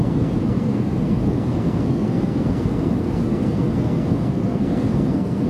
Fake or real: fake